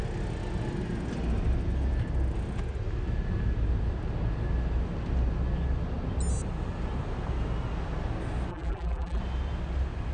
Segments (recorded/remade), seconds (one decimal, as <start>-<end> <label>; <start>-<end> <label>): 0.0-8.5 recorded; 8.5-9.2 remade; 9.2-10.1 recorded